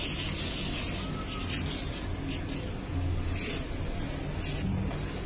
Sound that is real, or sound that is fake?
real